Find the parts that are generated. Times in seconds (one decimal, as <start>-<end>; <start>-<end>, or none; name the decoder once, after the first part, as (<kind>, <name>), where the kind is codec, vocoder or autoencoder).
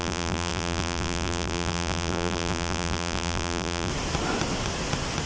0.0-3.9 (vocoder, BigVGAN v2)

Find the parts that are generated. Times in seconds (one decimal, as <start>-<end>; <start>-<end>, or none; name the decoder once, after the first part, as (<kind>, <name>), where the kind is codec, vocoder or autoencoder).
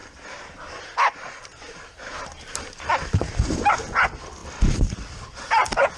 0.0-3.6 (vocoder, BigVGAN v2)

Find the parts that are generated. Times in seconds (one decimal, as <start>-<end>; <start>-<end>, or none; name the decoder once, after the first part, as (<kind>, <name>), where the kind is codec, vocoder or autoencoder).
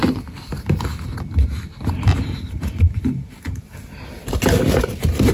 1.9-3.7 (vocoder, BigVGAN v2); 4.8-5.3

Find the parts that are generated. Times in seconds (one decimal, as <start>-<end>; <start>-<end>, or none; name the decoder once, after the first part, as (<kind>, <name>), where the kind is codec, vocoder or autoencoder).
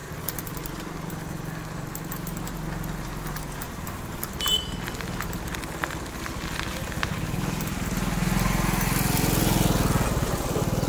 none